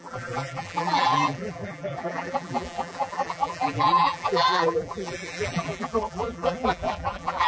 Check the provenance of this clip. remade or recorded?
remade